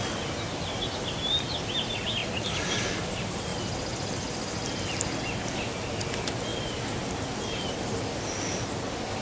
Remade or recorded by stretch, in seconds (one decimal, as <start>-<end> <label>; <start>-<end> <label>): 0.0-9.2 recorded